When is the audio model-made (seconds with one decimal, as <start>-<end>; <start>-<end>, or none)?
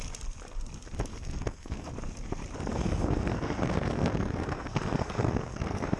1.1-1.9; 2.7-6.0